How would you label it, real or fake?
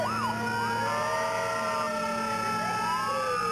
real